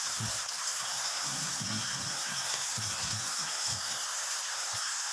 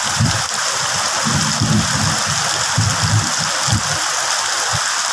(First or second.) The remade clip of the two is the first